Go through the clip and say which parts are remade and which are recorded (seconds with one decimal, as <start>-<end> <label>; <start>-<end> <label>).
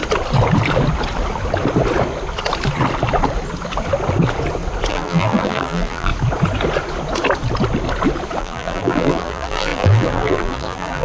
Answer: 0.0-4.9 recorded; 4.9-6.1 remade; 6.1-8.4 recorded; 8.4-11.0 remade